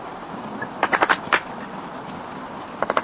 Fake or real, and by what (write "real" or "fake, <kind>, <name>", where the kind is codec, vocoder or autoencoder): real